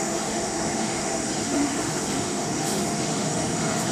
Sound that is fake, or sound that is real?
fake